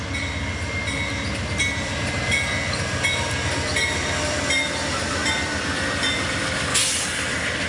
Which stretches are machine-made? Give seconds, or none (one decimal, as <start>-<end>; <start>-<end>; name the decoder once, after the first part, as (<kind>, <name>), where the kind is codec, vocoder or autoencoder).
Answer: none